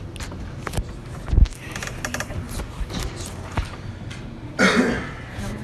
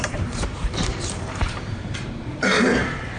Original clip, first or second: first